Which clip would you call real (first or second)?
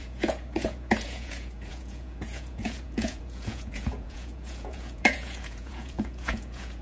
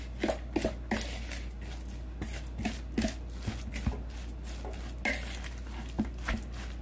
second